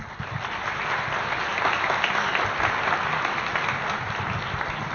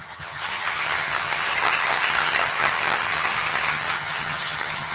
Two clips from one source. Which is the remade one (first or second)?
second